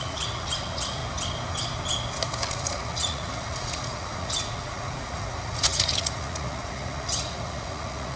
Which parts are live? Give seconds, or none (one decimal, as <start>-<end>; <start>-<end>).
1.0-2.5